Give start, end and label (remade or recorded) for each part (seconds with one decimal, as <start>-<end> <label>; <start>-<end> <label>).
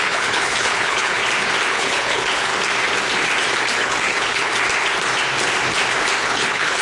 0.0-1.2 remade; 1.2-1.7 recorded; 1.7-2.5 remade; 2.5-3.8 recorded; 3.8-4.5 remade; 4.5-6.2 recorded; 6.2-6.8 remade